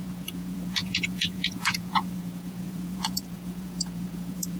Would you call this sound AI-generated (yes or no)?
yes